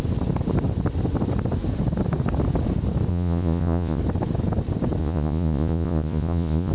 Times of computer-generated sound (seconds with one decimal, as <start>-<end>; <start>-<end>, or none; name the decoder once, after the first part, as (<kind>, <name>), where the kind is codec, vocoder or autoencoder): 3.1-4.0 (vocoder, Vocos); 5.0-6.7